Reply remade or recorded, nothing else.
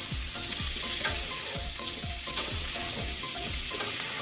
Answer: remade